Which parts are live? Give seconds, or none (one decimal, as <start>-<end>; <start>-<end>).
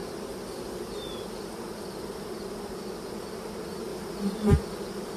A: 0.0-3.9